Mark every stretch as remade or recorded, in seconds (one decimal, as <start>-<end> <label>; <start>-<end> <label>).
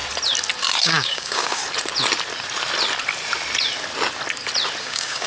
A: 0.0-0.8 recorded; 0.8-1.6 remade; 1.6-4.8 recorded; 4.8-5.3 remade